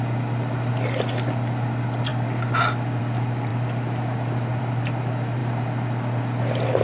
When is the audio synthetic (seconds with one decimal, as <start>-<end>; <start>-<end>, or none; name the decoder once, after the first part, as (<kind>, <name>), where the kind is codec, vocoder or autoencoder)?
none